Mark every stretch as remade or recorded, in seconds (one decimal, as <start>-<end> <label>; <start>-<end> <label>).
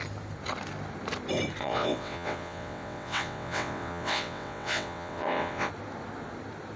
0.0-1.6 recorded; 1.6-5.7 remade; 5.7-6.8 recorded